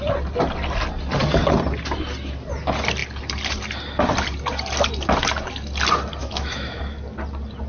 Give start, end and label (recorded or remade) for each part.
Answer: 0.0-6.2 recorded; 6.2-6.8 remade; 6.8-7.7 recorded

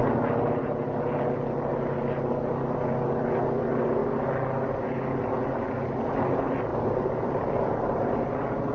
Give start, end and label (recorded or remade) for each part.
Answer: 0.0-6.7 recorded; 6.7-8.2 remade; 8.2-8.7 recorded

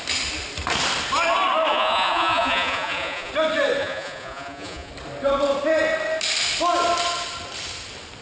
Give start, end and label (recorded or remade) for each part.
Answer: 0.0-1.7 recorded; 1.7-3.3 remade; 3.3-3.8 recorded; 3.8-4.9 remade; 4.9-8.2 recorded